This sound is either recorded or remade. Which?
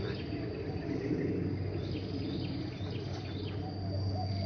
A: recorded